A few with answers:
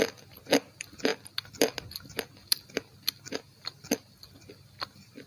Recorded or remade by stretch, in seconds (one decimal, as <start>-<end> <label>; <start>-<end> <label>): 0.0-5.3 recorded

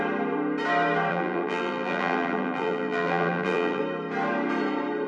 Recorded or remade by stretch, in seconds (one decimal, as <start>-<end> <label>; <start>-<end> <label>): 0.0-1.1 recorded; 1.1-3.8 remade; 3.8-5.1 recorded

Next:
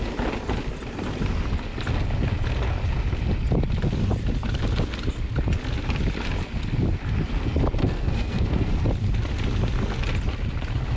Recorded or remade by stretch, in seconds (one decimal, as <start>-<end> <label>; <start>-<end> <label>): 0.0-7.8 recorded; 7.8-8.7 remade; 8.7-11.0 recorded